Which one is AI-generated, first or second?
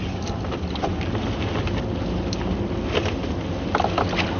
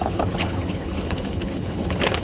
second